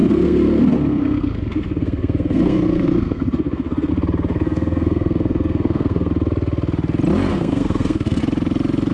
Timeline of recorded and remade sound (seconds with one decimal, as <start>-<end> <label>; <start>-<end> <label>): 0.0-3.9 remade; 3.9-4.3 recorded; 4.3-6.1 remade; 6.1-7.3 recorded; 7.3-8.2 remade; 8.2-8.9 recorded